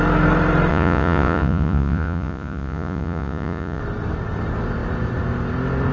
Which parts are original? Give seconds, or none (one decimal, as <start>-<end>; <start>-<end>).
0.0-0.7; 3.8-5.9